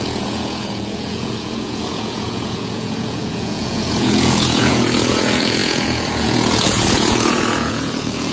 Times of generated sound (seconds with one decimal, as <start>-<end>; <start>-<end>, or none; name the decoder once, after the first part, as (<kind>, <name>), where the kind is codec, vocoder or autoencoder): 0.0-8.3 (vocoder, Vocos)